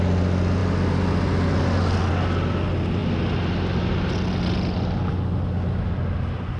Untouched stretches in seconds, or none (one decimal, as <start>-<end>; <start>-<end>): 0.0-6.6